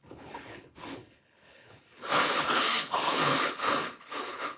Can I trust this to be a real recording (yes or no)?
no